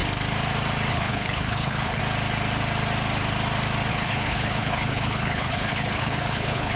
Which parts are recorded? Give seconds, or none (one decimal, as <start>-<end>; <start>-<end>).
0.0-0.9; 2.0-3.9